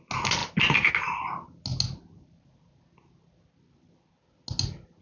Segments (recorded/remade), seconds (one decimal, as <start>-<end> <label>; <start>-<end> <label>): 0.0-5.0 recorded